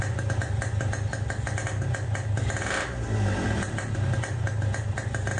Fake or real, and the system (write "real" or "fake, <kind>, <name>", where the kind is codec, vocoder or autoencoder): real